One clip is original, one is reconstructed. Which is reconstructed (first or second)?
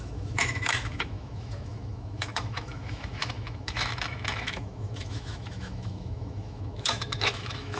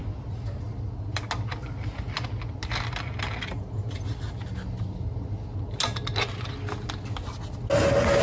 first